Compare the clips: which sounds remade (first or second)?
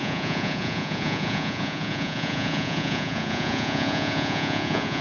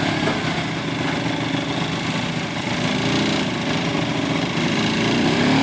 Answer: first